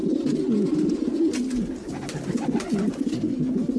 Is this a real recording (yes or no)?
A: yes